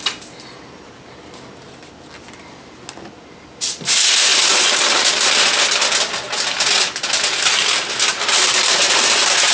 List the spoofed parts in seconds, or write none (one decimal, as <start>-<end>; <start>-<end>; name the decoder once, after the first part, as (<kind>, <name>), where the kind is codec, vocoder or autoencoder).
none